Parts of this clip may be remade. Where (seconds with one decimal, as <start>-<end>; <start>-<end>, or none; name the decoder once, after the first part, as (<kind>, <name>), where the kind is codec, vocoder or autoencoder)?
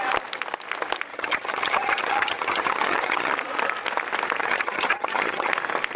1.1-3.3 (vocoder, HiFi-GAN); 4.4-5.5